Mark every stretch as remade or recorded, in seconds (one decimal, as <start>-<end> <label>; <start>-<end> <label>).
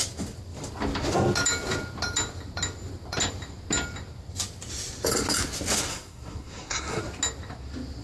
0.0-5.9 recorded; 5.9-7.0 remade; 7.0-8.0 recorded